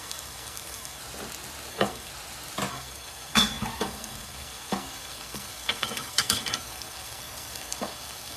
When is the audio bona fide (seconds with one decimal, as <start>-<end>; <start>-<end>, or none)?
1.0-1.7; 2.1-2.7